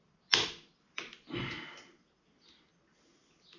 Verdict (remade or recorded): recorded